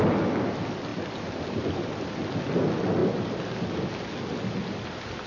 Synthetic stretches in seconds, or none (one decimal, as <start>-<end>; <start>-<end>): 0.9-2.2